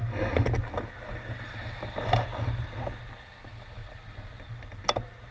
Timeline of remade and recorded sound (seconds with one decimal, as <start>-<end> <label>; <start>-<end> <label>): 0.0-5.3 recorded